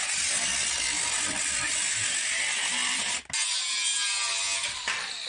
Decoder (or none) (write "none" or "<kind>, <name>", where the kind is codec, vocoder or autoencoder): none